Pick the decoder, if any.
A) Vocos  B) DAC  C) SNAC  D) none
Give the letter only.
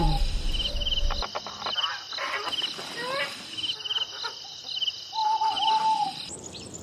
D